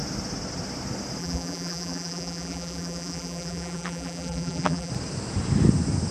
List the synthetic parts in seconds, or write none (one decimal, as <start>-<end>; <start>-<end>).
1.2-4.9